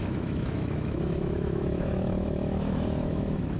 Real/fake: fake